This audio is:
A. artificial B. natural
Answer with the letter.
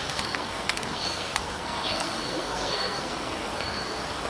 A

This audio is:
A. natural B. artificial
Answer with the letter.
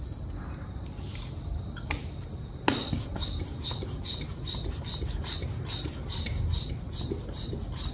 A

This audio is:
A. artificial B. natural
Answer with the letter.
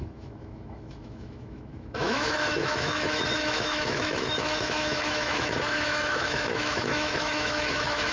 A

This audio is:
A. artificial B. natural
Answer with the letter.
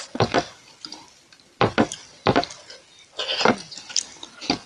B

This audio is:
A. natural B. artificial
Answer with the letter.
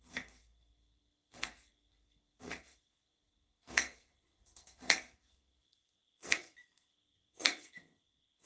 B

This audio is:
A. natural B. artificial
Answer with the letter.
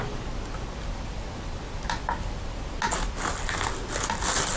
A